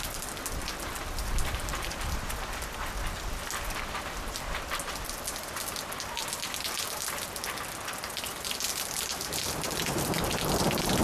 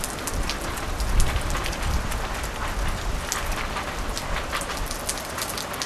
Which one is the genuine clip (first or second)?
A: second